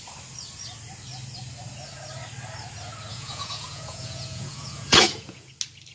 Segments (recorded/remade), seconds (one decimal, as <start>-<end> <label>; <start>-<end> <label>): 0.0-3.1 recorded; 3.1-5.5 remade; 5.5-5.9 recorded